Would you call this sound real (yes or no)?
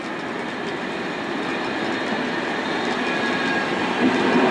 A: yes